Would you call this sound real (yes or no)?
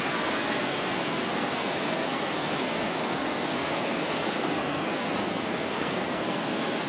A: no